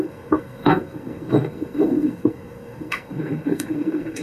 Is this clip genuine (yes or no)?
no